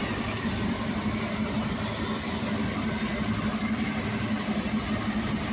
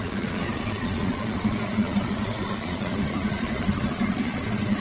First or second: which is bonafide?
first